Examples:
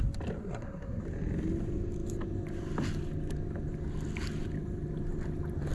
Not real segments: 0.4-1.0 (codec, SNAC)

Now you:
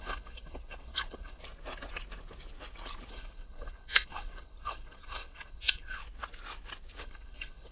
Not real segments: 0.0-1.4 (codec, HILCodec); 3.1-6.0; 7.0-7.7

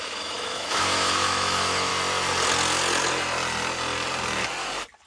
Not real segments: 0.0-1.9 (autoencoder, DAC-VAE)

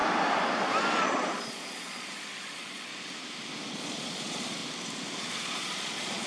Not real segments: 1.0-2.9 (vocoder, Vocos); 3.7-4.6; 5.3-6.3

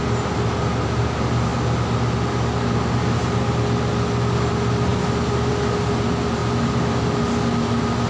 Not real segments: none

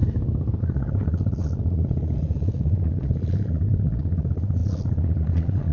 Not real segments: 0.6-5.7 (vocoder, Vocos)

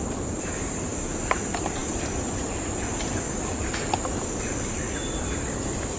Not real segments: none

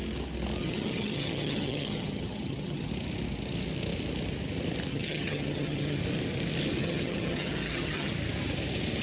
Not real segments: 0.6-2.9 (vocoder, HiFi-GAN); 4.9-6.0; 6.8-8.1